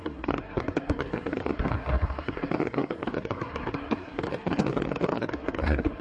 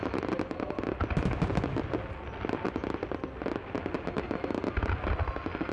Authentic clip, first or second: second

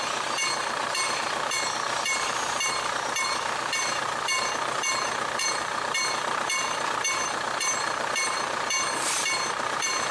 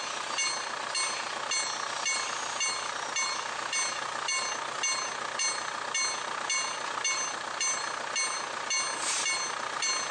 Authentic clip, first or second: second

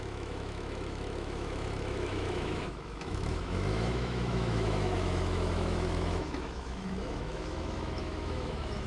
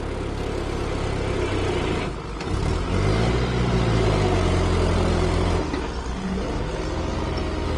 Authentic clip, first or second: second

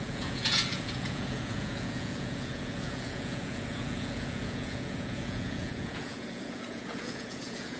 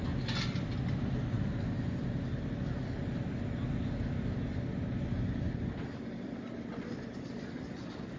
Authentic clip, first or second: second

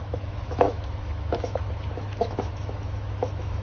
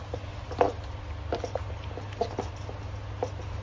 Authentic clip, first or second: second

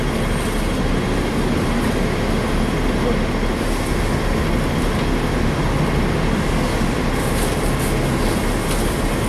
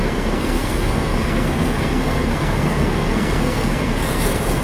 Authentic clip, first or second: first